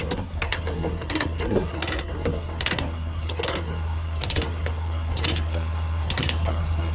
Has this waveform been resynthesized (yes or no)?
yes